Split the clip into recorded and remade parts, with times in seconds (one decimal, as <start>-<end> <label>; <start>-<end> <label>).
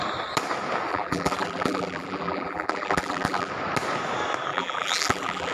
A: 0.0-0.9 recorded; 0.9-3.5 remade; 3.5-4.5 recorded; 4.5-5.5 remade